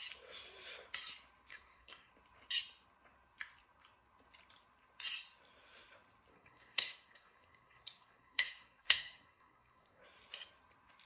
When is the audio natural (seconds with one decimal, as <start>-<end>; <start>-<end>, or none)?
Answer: 0.0-1.5; 2.1-6.3; 10.0-11.1